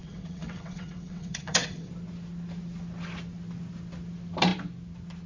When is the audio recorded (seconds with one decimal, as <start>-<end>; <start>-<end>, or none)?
1.9-5.3